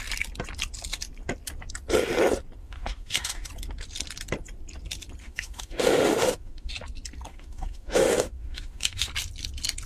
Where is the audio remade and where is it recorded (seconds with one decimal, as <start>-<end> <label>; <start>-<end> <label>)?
0.0-2.6 recorded; 2.6-3.5 remade; 3.5-5.2 recorded; 5.2-6.7 remade; 6.7-7.3 recorded; 7.3-9.1 remade; 9.1-9.9 recorded